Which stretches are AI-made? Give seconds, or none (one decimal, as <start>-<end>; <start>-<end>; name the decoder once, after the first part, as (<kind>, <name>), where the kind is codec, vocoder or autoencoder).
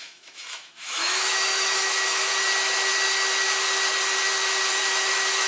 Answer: 0.0-2.3 (autoencoder, DAC-VAE); 4.7-5.5